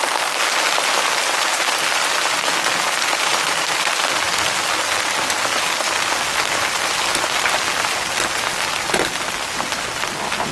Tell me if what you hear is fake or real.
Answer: real